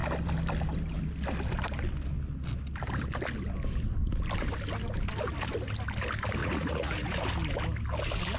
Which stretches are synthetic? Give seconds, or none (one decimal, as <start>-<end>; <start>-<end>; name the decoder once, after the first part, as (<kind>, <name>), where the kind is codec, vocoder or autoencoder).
6.4-7.1 (vocoder, Vocos)